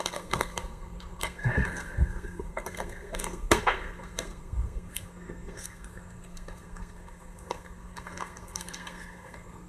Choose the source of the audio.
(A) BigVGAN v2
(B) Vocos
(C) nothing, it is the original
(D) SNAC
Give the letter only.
D